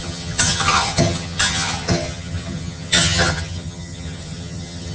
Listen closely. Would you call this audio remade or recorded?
remade